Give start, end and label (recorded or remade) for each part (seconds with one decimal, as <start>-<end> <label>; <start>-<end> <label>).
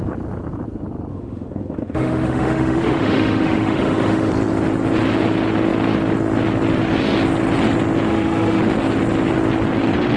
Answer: 0.0-1.1 recorded; 1.1-4.3 remade; 4.3-8.1 recorded; 8.1-8.6 remade; 8.6-10.2 recorded